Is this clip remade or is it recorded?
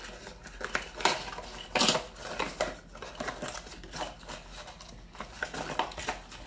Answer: recorded